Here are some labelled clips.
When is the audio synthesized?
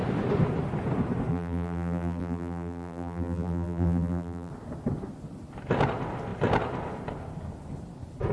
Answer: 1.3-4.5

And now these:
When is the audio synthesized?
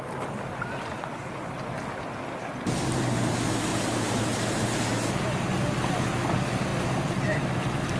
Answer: 3.7-4.2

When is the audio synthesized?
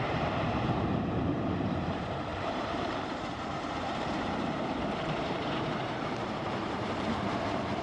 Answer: 0.0-7.8